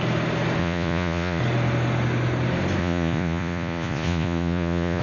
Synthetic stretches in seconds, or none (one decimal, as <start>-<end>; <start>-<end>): 0.6-1.4; 2.8-5.0